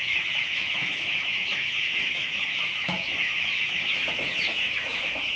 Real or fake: fake